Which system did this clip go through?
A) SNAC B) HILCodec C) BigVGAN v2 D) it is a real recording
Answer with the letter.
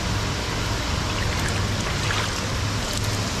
D